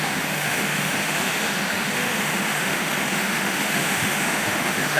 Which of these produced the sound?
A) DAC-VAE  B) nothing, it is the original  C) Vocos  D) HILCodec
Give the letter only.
A